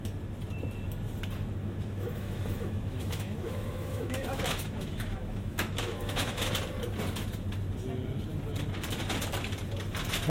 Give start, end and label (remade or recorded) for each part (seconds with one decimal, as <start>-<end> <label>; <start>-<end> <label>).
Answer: 0.0-1.6 recorded; 1.6-6.5 remade; 6.5-10.3 recorded